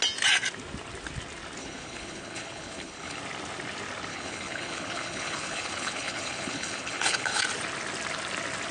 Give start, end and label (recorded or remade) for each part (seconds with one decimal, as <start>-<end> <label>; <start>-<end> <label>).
0.0-1.6 recorded; 1.6-3.2 remade; 3.2-4.1 recorded; 4.1-7.4 remade; 7.4-8.7 recorded